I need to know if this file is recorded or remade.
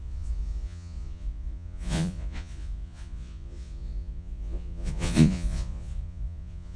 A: remade